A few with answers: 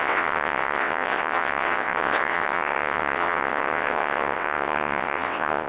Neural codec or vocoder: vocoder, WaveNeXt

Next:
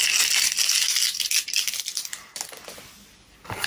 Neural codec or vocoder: none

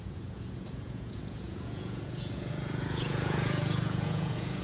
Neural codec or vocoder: vocoder, Vocos